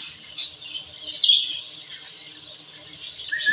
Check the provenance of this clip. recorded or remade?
recorded